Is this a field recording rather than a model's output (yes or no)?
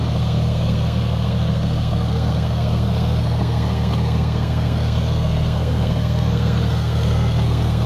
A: no